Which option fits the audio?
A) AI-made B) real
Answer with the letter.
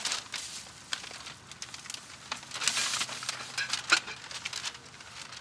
B